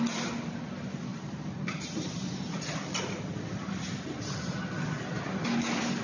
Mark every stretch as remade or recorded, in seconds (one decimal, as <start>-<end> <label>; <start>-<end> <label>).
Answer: 0.0-1.1 recorded; 1.1-4.7 remade; 4.7-6.0 recorded